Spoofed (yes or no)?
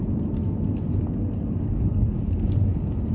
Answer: no